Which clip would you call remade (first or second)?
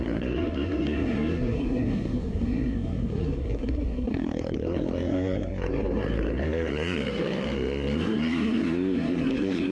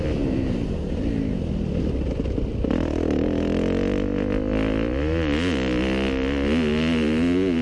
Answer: first